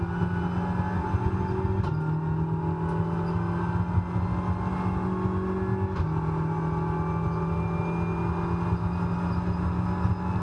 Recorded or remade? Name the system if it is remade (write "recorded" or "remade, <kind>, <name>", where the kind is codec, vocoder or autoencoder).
recorded